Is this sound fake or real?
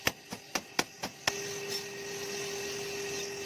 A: real